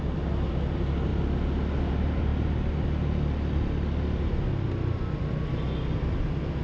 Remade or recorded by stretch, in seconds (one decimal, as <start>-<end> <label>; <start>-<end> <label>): 0.0-6.6 recorded